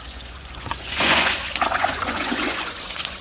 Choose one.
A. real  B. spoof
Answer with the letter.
B